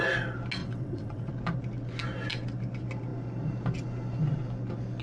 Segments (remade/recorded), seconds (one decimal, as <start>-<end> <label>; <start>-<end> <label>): 0.0-0.6 recorded; 0.6-1.3 remade; 1.3-5.0 recorded